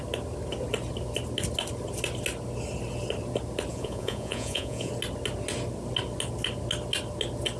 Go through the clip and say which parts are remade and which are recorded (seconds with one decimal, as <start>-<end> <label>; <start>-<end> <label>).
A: 0.0-3.7 recorded; 3.7-4.9 remade; 4.9-7.6 recorded

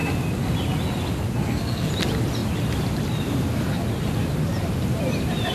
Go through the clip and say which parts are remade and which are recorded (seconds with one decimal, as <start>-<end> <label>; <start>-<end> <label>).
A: 0.0-1.4 recorded; 1.4-1.9 remade; 1.9-5.5 recorded

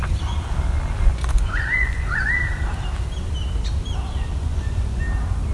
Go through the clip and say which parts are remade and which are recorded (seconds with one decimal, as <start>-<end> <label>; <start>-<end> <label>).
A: 0.0-1.1 recorded; 1.1-2.3 remade; 2.3-4.4 recorded; 4.4-5.0 remade; 5.0-5.5 recorded